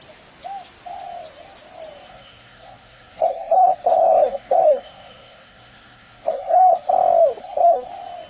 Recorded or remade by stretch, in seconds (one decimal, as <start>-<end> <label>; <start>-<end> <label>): 0.0-2.1 recorded; 2.1-6.9 remade; 6.9-7.4 recorded; 7.4-7.9 remade; 7.9-8.3 recorded